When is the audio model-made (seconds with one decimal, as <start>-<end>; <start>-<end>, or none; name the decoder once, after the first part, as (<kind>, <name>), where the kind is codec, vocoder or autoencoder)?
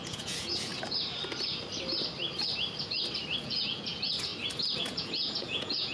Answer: 0.0-0.7 (vocoder, Vocos); 3.4-4.3; 4.8-5.9